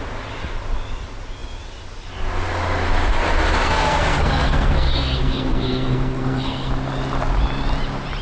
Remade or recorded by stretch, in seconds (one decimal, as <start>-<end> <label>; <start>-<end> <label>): 0.0-3.6 recorded; 3.6-6.7 remade; 6.7-8.2 recorded